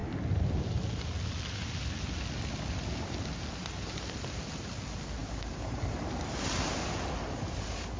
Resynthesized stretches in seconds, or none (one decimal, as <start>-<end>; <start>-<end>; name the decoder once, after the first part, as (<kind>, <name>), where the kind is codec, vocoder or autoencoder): 5.2-6.2 (vocoder, BigVGAN v2)